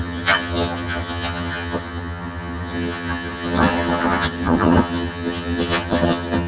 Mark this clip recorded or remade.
remade